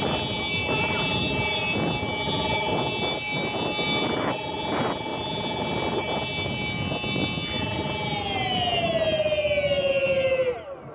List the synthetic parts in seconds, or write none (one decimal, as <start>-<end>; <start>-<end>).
none